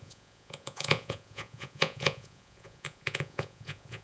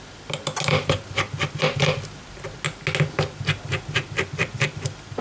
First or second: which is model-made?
first